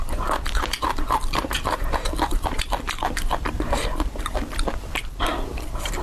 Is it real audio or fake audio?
fake